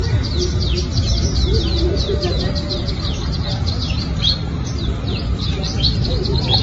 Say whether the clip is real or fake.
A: real